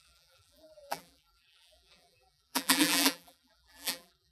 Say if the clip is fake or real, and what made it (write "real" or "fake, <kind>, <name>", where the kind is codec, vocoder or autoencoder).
fake, vocoder, BigVGAN v2